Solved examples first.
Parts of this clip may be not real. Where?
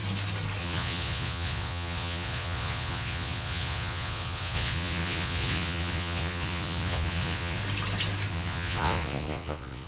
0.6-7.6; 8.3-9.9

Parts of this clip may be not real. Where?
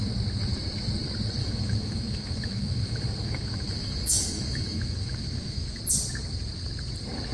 1.4-5.8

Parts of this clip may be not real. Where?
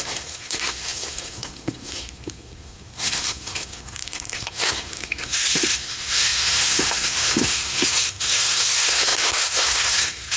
0.0-10.4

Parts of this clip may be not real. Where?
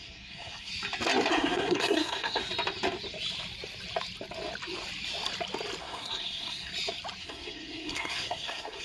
0.0-0.7; 1.3-2.4; 5.8-6.7; 7.2-8.8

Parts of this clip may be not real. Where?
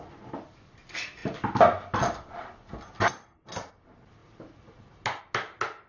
none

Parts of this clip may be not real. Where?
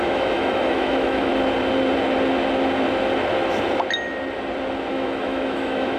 0.0-1.3; 4.9-6.0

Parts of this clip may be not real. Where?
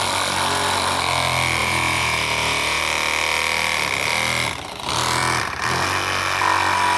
1.6-2.8